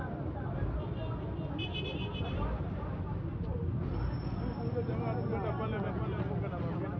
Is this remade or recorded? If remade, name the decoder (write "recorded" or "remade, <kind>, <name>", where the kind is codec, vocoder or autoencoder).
recorded